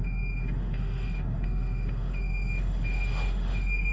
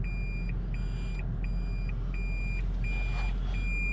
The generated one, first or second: first